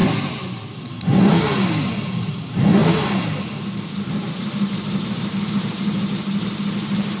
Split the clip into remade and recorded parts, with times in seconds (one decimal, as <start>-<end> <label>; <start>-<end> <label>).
0.0-7.2 recorded